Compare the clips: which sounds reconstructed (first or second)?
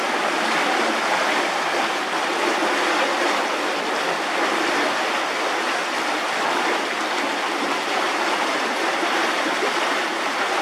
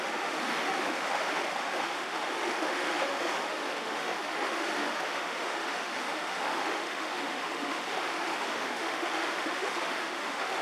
second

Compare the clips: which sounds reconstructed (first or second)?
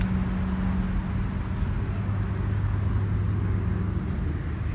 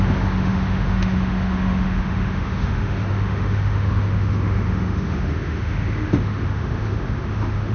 second